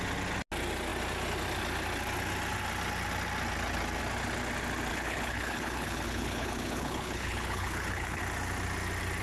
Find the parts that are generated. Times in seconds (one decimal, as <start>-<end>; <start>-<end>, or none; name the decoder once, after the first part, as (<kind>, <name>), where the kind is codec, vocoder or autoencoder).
4.9-8.2 (codec, HILCodec)